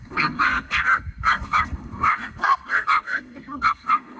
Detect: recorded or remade remade